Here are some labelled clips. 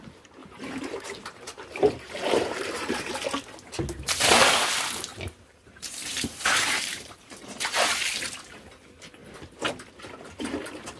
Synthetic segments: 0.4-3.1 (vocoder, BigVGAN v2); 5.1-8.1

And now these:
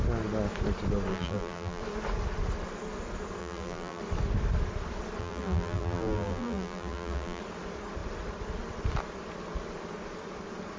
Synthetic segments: 1.1-1.8 (vocoder, BigVGAN v2); 3.4-4.0; 5.2-7.4

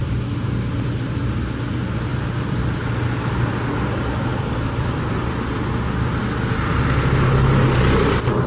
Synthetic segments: 0.0-0.9 (vocoder, BigVGAN v2); 2.1-3.5; 4.3-5.7

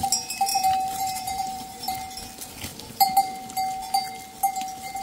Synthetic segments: 0.5-1.9 (vocoder, BigVGAN v2)